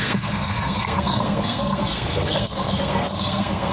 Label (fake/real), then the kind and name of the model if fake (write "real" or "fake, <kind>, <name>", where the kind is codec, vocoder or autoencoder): fake, codec, SNAC